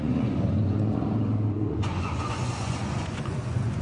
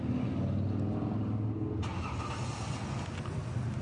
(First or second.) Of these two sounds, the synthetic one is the first